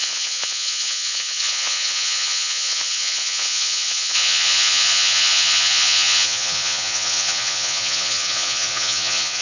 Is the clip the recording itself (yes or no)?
no